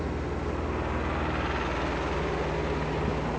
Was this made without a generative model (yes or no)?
yes